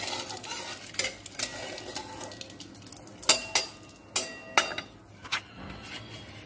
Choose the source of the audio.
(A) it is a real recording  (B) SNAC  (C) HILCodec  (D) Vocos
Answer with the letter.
A